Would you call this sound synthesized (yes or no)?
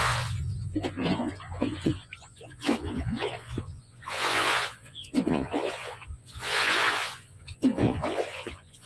yes